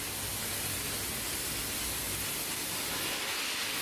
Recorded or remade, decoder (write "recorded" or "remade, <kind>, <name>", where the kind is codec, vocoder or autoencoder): recorded